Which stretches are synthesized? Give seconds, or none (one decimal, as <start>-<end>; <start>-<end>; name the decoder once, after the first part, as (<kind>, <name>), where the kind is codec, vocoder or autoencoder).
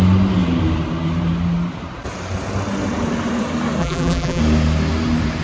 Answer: 3.8-4.4 (vocoder, BigVGAN v2)